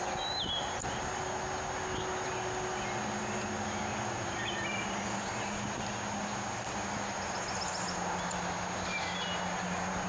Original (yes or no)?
yes